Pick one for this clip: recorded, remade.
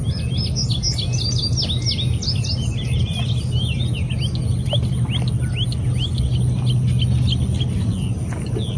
recorded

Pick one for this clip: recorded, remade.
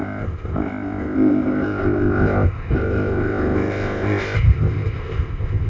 remade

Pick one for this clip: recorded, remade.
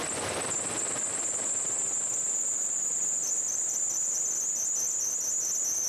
recorded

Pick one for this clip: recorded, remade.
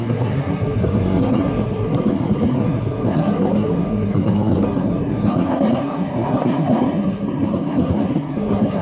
remade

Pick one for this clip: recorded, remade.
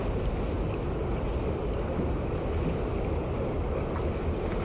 recorded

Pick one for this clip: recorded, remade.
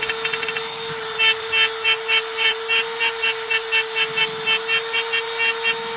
recorded